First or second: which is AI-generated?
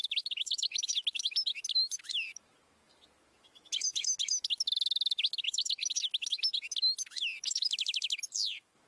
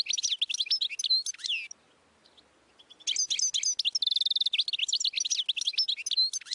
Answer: first